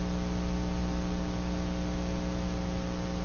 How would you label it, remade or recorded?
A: recorded